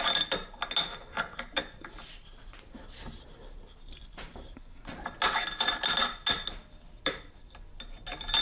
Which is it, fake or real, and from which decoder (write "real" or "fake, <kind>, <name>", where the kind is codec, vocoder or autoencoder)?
real